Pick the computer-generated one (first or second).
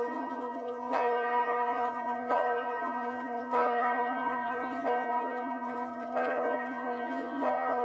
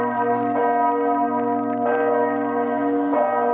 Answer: first